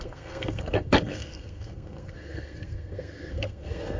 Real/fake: fake